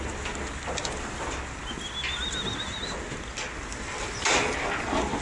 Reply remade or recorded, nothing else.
recorded